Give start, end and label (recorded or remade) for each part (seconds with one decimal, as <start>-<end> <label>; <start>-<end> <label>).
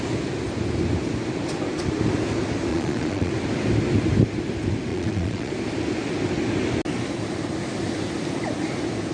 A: 0.0-2.7 recorded; 2.7-3.3 remade; 3.3-4.9 recorded; 4.9-5.5 remade; 5.5-9.1 recorded